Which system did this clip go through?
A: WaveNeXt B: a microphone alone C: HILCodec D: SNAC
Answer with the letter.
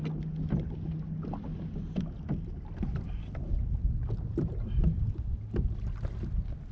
B